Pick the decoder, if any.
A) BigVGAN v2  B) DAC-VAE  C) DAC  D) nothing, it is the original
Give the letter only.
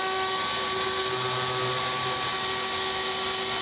D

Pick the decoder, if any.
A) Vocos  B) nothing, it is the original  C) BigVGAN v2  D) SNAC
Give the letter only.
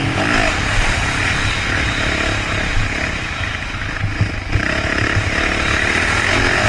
B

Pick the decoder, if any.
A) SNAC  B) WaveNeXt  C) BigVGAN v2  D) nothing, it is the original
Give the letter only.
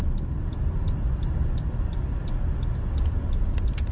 D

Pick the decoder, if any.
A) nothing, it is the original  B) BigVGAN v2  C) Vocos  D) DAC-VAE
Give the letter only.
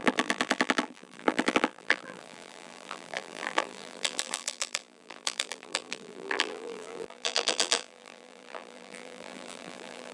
B